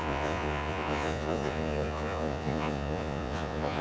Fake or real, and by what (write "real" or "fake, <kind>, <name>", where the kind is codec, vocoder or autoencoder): fake, vocoder, Vocos